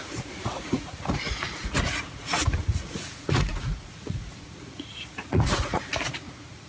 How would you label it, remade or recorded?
remade